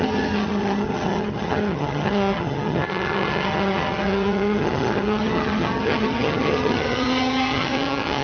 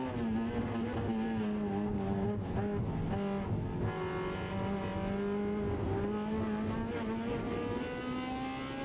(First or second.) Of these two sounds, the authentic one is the second